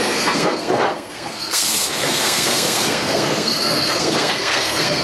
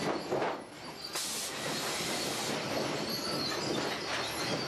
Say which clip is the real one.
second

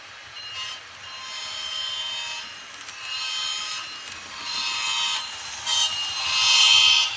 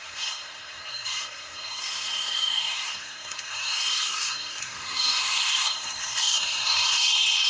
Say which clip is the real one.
first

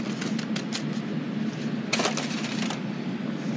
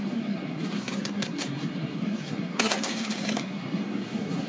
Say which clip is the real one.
first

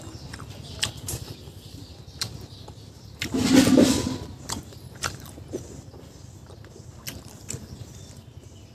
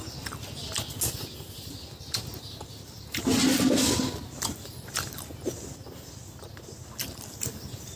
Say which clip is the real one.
second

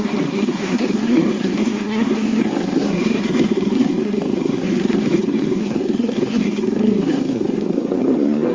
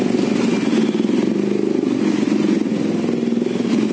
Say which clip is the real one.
second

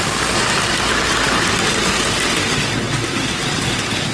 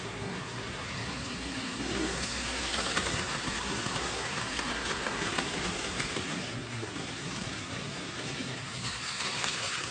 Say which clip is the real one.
first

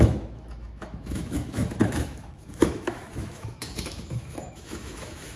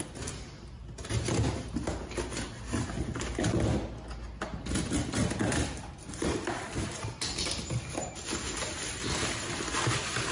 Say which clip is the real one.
second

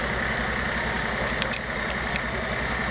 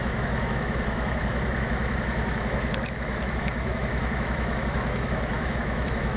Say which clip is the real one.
first